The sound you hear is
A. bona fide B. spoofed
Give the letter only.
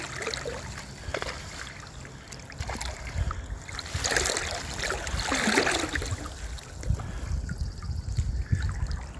A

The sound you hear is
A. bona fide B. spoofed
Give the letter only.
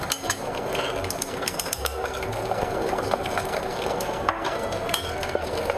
B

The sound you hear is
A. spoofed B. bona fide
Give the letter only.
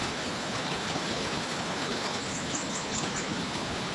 A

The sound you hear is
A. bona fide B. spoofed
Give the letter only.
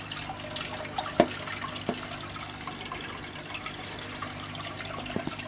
A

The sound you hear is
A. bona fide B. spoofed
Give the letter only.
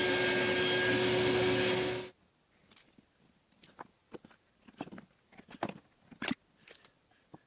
A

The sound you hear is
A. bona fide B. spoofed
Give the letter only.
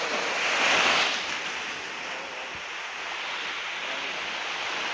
A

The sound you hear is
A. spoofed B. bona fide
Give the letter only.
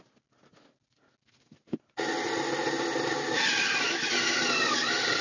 B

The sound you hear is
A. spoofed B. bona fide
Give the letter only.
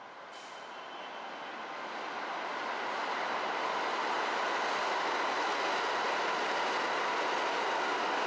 B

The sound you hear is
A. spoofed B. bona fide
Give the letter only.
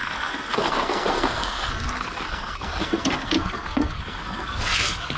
A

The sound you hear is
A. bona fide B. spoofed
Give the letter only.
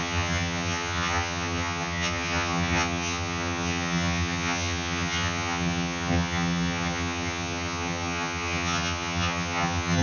B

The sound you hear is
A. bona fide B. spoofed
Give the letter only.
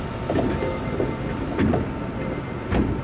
A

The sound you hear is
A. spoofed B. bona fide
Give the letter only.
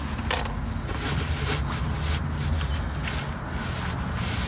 B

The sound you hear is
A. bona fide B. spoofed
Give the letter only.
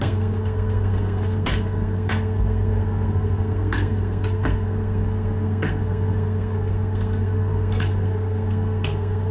B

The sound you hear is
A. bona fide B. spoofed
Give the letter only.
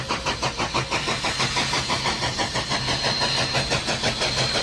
A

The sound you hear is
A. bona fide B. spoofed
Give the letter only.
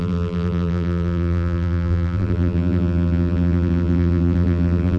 B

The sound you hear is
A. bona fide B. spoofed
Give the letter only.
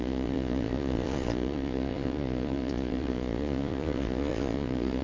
B